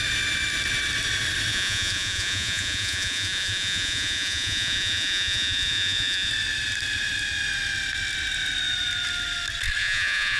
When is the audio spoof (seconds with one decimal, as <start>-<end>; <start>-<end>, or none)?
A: 1.5-6.3; 9.8-10.4

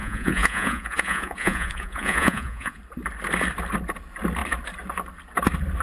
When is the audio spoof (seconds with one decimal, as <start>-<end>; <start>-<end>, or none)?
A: 0.0-2.8

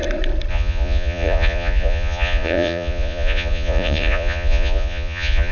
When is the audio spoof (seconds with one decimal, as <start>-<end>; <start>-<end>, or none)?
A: 0.5-5.5